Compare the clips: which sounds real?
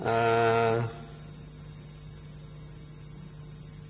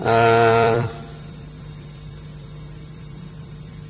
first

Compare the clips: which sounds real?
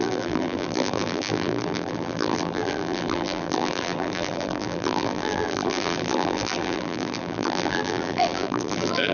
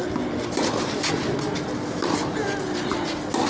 second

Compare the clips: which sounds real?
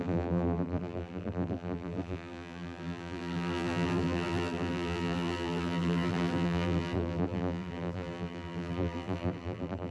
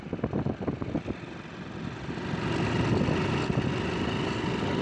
second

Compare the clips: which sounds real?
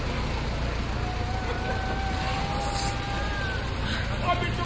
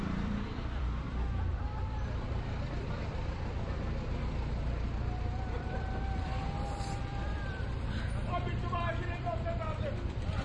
first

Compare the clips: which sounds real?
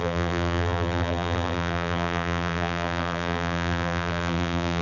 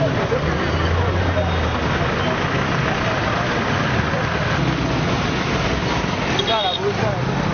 second